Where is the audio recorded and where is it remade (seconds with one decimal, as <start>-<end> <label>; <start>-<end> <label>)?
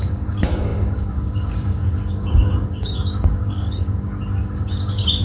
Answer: 0.0-5.2 remade